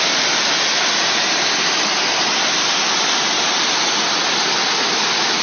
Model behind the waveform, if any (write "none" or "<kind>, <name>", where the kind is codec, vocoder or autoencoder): none